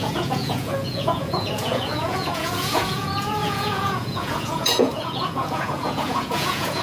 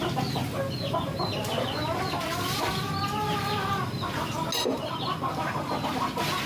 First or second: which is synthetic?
first